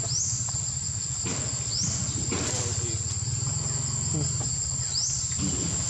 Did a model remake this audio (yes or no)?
no